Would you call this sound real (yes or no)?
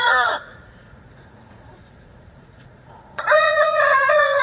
no